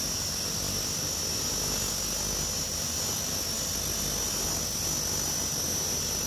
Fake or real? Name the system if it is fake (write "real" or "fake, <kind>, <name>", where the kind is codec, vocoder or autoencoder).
real